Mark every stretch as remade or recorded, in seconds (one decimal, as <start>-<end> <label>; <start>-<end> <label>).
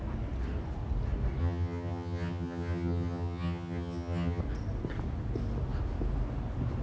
0.0-1.4 recorded; 1.4-4.4 remade; 4.4-6.8 recorded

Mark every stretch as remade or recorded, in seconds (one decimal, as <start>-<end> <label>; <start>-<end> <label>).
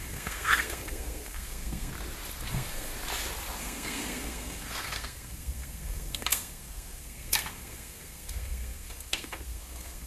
0.0-1.9 remade; 1.9-2.5 recorded; 2.5-2.9 remade; 2.9-3.6 recorded; 3.6-10.1 remade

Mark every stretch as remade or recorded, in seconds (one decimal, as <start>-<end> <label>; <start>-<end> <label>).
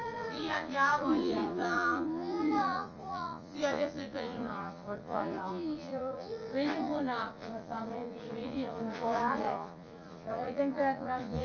0.0-11.4 remade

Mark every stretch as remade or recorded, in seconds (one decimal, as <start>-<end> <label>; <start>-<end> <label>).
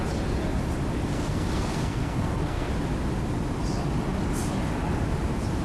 0.0-1.1 recorded; 1.1-2.7 remade; 2.7-5.6 recorded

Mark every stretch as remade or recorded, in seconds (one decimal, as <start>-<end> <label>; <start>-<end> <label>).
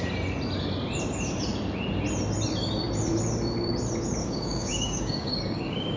0.0-4.2 recorded; 4.2-6.0 remade